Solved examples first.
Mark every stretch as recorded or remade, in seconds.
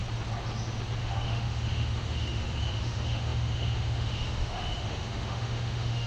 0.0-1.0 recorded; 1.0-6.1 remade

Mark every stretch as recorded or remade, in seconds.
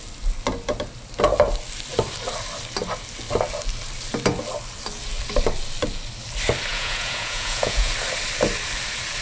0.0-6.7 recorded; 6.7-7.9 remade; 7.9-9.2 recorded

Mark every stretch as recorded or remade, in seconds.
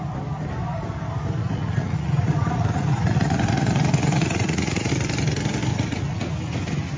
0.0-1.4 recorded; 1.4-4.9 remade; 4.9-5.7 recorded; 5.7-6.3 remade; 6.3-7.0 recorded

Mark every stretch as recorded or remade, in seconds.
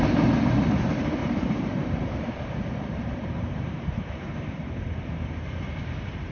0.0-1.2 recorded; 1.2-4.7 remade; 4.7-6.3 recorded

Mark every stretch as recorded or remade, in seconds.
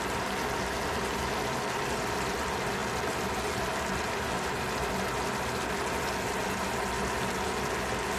0.0-8.2 recorded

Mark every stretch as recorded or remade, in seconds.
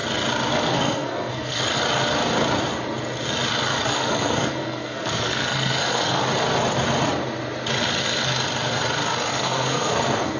0.0-0.5 recorded; 0.5-1.7 remade; 1.7-3.9 recorded; 3.9-6.2 remade; 6.2-9.4 recorded; 9.4-10.4 remade